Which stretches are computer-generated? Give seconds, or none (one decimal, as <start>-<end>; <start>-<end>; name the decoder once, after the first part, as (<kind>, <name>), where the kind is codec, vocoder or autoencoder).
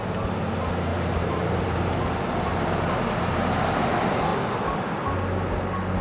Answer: 0.9-3.9 (vocoder, BigVGAN v2)